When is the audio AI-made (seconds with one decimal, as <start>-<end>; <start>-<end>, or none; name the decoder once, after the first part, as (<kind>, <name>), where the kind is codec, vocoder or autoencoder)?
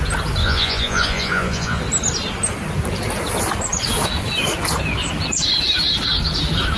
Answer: 0.4-1.8 (vocoder, Vocos)